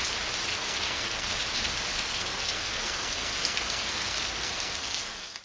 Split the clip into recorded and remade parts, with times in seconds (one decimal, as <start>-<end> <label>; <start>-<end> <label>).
0.0-0.5 recorded; 0.5-1.4 remade; 1.4-1.9 recorded; 1.9-5.4 remade